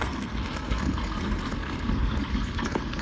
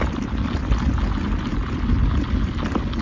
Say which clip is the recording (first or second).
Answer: second